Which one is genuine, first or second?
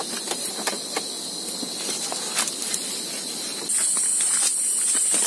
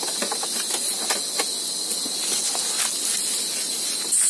second